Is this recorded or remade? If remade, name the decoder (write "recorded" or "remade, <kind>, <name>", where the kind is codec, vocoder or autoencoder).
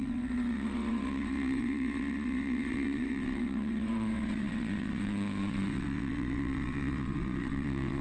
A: remade, vocoder, WaveNeXt